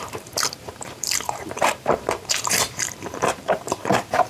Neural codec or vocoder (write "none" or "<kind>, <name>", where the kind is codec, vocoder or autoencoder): vocoder, BigVGAN v2